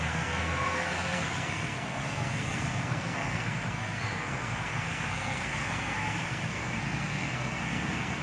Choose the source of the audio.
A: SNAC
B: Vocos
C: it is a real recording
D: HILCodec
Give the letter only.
A